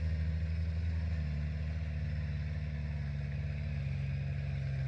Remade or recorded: recorded